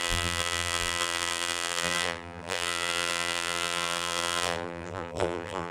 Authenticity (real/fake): fake